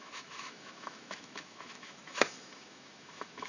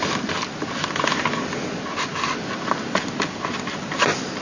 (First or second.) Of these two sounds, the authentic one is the second